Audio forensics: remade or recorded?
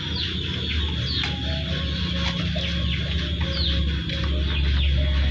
recorded